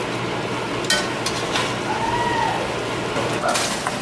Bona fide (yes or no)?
yes